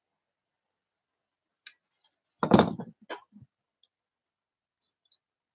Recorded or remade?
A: recorded